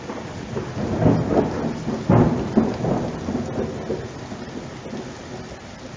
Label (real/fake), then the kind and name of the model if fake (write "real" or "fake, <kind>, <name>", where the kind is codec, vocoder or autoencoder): real